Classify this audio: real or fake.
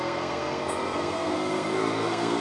fake